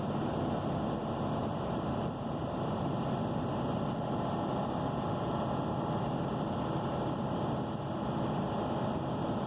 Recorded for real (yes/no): yes